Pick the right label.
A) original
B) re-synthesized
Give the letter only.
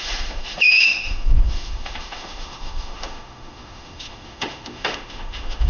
B